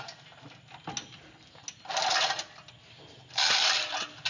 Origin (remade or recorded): recorded